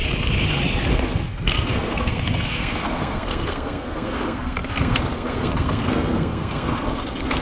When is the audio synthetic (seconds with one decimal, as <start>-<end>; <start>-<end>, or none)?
0.9-7.4